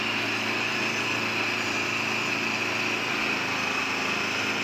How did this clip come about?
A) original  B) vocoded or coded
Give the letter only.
A